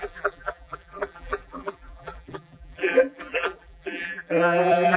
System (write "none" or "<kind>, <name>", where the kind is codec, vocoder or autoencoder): vocoder, BigVGAN v2